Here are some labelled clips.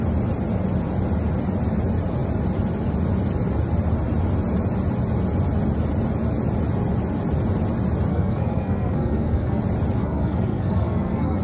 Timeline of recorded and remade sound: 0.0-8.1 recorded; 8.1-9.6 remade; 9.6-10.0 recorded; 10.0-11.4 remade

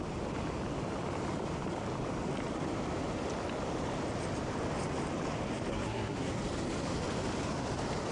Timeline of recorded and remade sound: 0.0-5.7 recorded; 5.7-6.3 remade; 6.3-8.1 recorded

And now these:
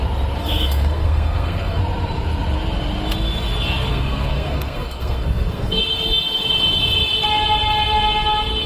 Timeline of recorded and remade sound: 0.0-0.4 recorded; 0.4-1.8 remade; 1.8-3.9 recorded; 3.9-5.8 remade; 5.8-8.7 recorded